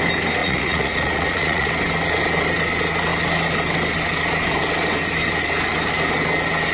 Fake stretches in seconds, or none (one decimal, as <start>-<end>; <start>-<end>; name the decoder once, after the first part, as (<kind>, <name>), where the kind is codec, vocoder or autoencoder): 0.4-1.7 (vocoder, Vocos)